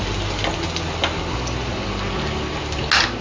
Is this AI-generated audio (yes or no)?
no